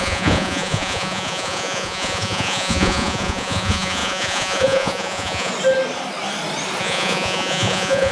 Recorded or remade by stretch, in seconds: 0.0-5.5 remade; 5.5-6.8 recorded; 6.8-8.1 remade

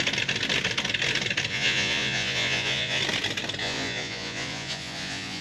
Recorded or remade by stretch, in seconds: 0.0-1.5 recorded; 1.5-3.0 remade; 3.0-3.6 recorded; 3.6-5.4 remade